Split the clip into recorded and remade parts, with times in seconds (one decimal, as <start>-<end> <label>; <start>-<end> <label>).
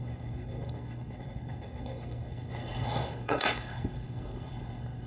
0.0-5.1 remade